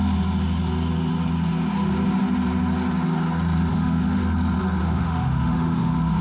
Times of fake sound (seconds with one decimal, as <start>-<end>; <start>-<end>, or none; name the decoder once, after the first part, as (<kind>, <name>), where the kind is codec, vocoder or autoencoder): 3.7-4.2 (autoencoder, DAC-VAE); 4.8-6.2